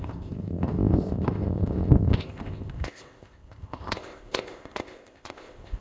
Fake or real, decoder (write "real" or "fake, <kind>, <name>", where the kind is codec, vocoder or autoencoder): fake, codec, ZipCodec